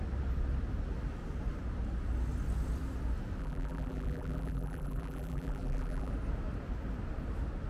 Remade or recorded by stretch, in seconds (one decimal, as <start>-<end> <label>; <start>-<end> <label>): 0.0-3.4 recorded; 3.4-6.1 remade; 6.1-7.7 recorded